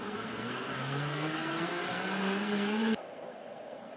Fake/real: fake